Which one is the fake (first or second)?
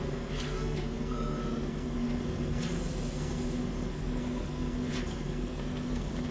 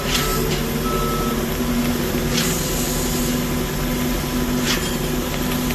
first